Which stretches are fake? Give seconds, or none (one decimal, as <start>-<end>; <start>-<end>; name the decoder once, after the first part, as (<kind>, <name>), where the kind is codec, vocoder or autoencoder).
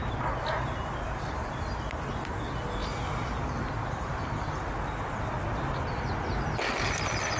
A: none